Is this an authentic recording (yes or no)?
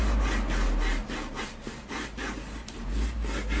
yes